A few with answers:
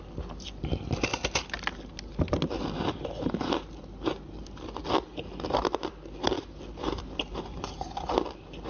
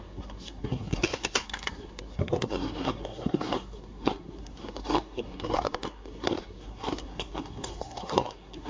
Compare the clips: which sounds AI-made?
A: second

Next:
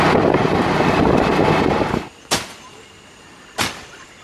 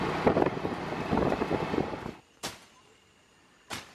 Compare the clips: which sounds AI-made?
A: second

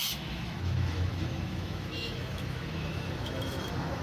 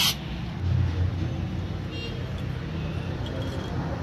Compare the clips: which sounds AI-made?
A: first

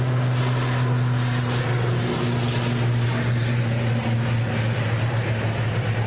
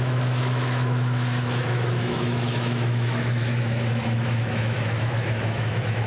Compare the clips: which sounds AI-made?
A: second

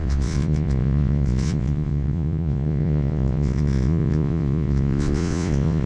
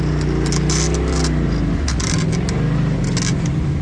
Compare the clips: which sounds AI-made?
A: first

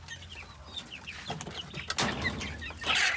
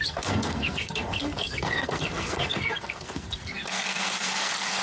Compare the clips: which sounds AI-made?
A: second